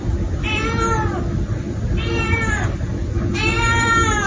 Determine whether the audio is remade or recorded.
recorded